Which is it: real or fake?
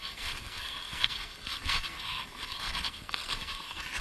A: fake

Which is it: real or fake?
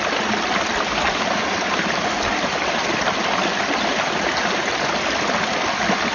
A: real